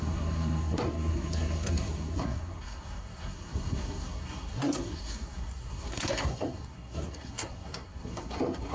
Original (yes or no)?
no